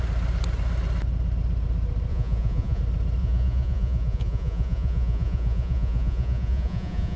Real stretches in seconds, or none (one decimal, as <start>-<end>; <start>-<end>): 0.0-2.1; 2.8-3.2

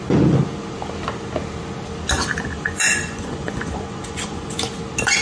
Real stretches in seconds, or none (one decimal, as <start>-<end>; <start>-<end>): 0.0-2.5; 4.6-5.2

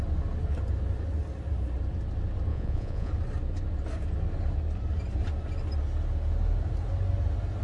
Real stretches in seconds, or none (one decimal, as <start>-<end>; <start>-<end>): 0.0-2.5; 3.1-7.6

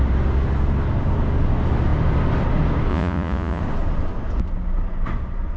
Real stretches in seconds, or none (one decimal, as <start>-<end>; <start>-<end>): 0.0-2.9; 3.6-5.6

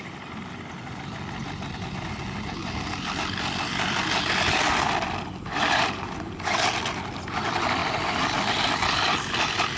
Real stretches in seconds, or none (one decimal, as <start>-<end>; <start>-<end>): 0.0-9.8

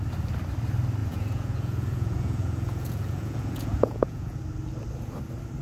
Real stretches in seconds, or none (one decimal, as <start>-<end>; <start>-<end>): 0.0-1.0; 4.4-5.6

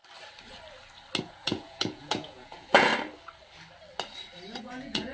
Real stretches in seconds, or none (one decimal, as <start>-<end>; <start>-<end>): 0.0-1.2; 2.9-4.6